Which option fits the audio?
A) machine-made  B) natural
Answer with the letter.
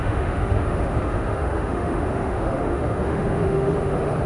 A